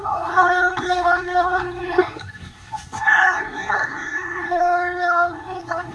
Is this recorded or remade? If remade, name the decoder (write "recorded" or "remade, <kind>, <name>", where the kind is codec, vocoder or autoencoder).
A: remade, codec, SNAC